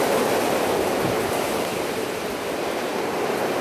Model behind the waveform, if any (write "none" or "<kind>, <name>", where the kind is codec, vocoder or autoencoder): none